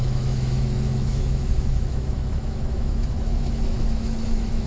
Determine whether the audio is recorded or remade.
remade